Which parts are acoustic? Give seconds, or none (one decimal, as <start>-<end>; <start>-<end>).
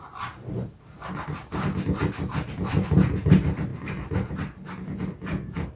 0.0-5.8